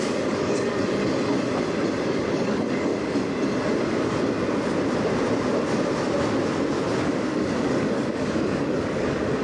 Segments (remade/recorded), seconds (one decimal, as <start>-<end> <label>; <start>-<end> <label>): 0.0-1.0 remade; 1.0-2.1 recorded; 2.1-2.9 remade; 2.9-7.0 recorded; 7.0-9.4 remade